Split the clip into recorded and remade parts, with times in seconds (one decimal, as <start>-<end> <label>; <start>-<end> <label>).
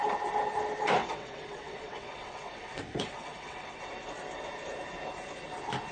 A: 0.0-1.0 recorded; 1.0-3.8 remade; 3.8-5.9 recorded